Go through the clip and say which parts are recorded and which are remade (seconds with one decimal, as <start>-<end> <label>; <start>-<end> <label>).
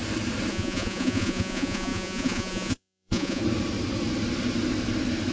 0.0-0.5 recorded; 0.5-3.4 remade; 3.4-5.3 recorded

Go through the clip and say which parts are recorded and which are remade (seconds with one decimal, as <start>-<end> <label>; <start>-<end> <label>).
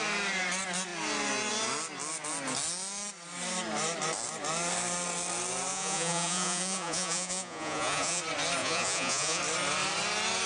0.0-5.7 recorded; 5.7-8.2 remade; 8.2-8.6 recorded; 8.6-9.4 remade; 9.4-10.5 recorded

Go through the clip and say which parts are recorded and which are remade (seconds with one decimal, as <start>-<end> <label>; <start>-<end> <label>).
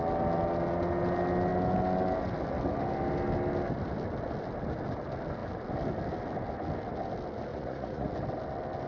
0.0-7.5 recorded; 7.5-8.1 remade; 8.1-8.9 recorded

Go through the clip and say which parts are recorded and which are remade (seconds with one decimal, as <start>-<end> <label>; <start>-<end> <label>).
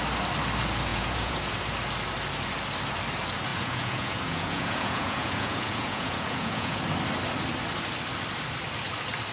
0.0-0.9 recorded; 0.9-1.5 remade; 1.5-3.5 recorded; 3.5-6.8 remade; 6.8-9.3 recorded